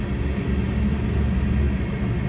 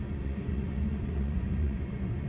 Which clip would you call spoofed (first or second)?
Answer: second